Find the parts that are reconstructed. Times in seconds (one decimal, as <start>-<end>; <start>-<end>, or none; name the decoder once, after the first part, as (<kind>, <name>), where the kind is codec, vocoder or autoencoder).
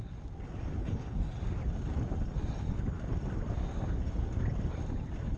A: 0.8-1.4 (codec, HILCodec)